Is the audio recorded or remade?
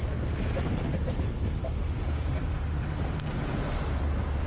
recorded